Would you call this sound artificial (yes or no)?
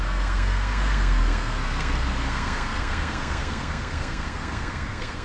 yes